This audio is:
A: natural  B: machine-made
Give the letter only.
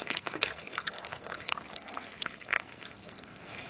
B